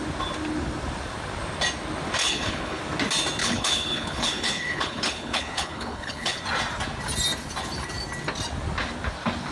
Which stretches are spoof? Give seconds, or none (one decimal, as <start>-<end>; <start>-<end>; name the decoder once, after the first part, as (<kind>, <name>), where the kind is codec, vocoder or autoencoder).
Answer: 2.2-2.8 (codec, HILCodec); 3.4-6.4